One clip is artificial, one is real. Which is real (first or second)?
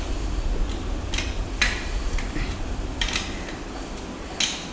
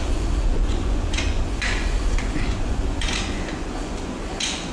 first